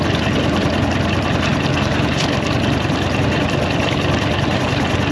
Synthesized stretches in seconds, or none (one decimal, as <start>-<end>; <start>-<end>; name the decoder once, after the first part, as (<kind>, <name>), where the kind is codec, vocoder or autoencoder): none